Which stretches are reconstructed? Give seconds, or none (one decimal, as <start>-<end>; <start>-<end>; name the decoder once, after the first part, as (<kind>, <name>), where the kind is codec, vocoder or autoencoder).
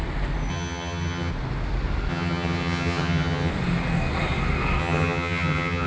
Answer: 0.5-1.3 (vocoder, HiFi-GAN); 2.1-3.5; 4.8-5.9